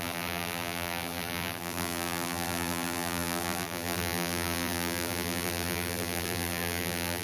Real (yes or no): no